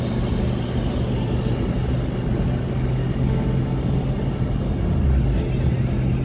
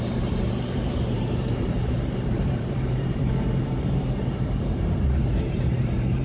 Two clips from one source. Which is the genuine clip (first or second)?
first